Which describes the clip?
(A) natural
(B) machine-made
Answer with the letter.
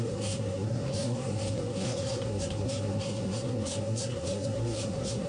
B